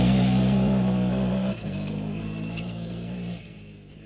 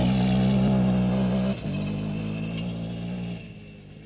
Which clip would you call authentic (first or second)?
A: second